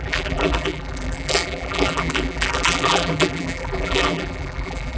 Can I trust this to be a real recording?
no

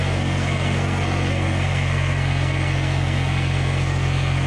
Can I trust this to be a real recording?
no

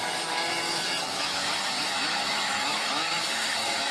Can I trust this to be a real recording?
no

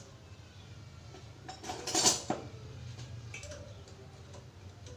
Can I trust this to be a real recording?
yes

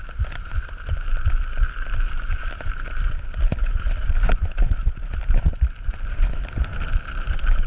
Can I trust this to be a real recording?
yes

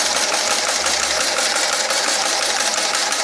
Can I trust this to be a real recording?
yes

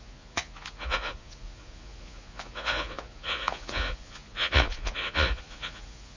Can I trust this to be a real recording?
no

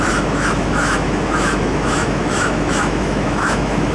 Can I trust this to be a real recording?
no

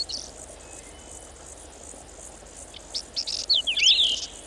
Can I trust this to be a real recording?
yes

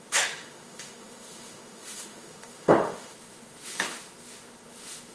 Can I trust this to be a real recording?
no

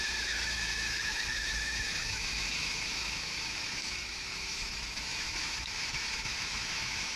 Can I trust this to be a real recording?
no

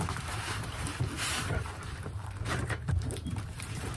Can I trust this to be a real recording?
no